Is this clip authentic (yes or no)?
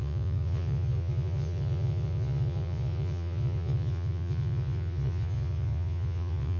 no